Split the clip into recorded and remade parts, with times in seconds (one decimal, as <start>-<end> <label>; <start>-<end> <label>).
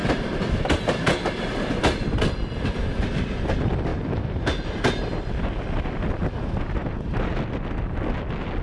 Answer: 0.0-1.7 remade; 1.7-6.8 recorded; 6.8-7.4 remade; 7.4-8.6 recorded